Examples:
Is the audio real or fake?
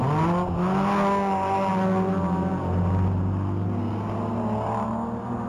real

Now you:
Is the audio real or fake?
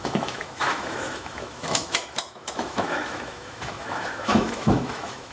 fake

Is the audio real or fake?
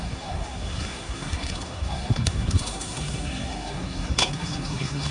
fake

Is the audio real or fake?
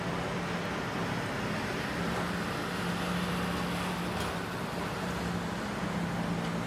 real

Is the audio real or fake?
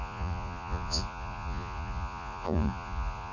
fake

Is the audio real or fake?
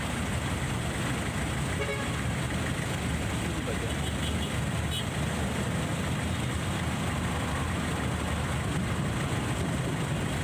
real